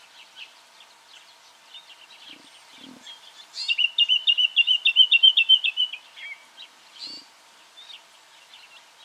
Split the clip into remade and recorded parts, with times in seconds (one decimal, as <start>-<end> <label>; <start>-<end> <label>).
0.0-2.6 recorded; 2.6-3.7 remade; 3.7-9.0 recorded